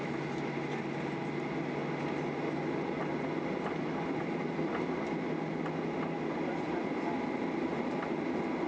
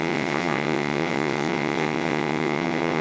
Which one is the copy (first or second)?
second